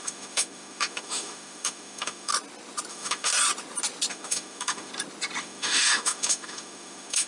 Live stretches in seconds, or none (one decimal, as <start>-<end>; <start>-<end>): 2.3-2.9; 3.3-4.1; 4.9-5.4